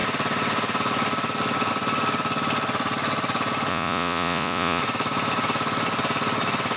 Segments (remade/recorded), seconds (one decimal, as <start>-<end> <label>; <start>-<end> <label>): 0.0-3.7 recorded; 3.7-4.8 remade; 4.8-6.8 recorded